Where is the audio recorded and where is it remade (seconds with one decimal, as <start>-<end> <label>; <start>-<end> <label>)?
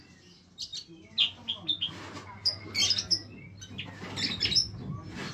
0.0-5.3 recorded